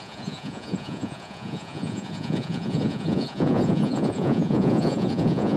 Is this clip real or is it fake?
fake